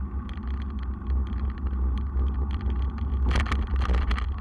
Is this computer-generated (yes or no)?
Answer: no